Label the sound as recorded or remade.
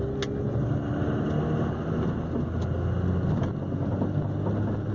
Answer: recorded